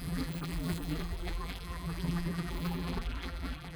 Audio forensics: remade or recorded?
remade